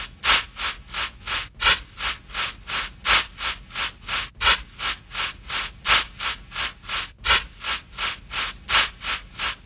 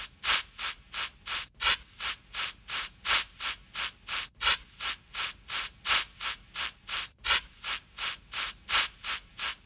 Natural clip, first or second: first